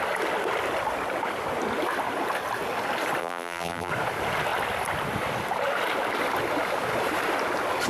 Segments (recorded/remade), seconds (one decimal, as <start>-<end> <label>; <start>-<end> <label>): 0.0-3.2 recorded; 3.2-3.9 remade; 3.9-7.9 recorded